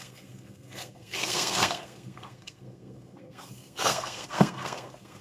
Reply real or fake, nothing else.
fake